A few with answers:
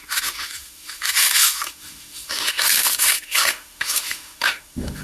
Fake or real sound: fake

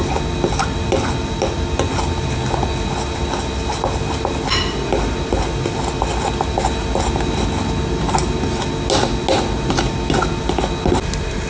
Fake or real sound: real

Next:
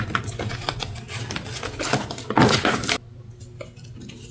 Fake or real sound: real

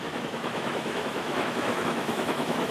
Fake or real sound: fake